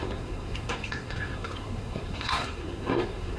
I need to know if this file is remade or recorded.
remade